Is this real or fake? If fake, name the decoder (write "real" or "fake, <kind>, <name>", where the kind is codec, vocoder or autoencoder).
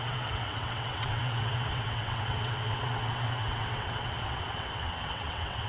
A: fake, vocoder, WaveNeXt